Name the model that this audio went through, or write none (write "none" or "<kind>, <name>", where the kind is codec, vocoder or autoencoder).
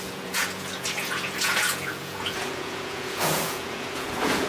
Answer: vocoder, Vocos